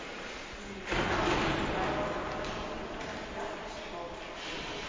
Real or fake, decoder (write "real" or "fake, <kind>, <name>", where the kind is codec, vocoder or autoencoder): real